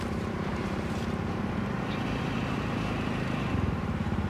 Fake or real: fake